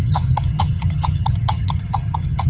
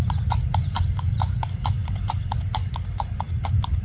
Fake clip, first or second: first